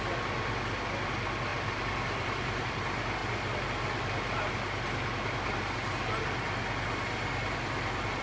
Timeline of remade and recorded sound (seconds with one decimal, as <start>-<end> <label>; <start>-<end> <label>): 0.0-1.5 recorded; 1.5-2.7 remade; 2.7-8.2 recorded